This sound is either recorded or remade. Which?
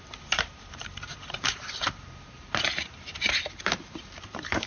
remade